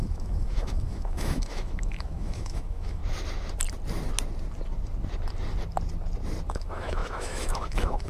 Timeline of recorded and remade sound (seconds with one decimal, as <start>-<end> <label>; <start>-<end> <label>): 0.0-3.0 remade; 3.0-6.5 recorded; 6.5-8.1 remade